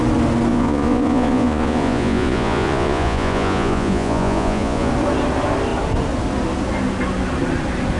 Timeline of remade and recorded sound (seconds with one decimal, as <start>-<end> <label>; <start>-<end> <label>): 0.0-0.5 recorded; 0.5-4.9 remade; 4.9-8.0 recorded